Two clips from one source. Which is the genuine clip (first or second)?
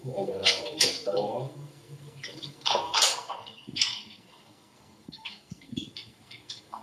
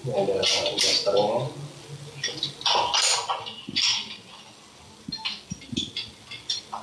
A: second